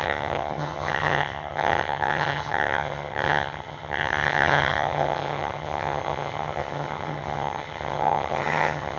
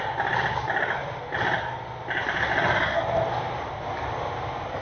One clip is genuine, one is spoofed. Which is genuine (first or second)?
second